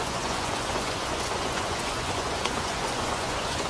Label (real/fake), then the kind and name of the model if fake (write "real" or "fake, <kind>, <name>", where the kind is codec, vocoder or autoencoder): fake, vocoder, Vocos